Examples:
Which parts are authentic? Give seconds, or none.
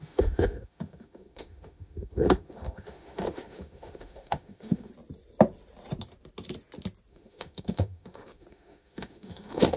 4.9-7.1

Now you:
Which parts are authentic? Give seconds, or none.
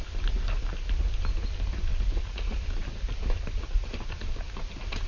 0.0-5.1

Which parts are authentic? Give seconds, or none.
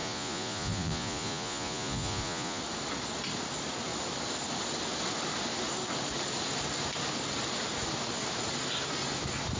2.6-9.6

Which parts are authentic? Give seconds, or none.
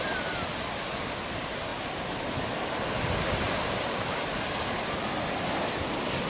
0.0-6.3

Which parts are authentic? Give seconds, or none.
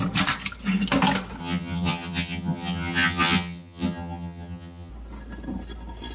0.0-1.4; 4.9-6.1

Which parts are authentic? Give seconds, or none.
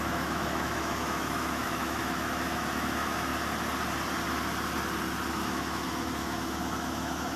3.3-5.3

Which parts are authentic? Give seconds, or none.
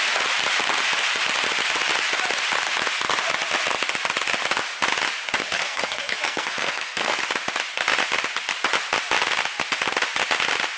0.0-5.4; 7.2-10.8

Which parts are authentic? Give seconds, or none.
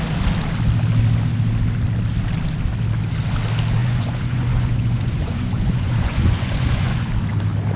0.0-3.8; 7.1-7.8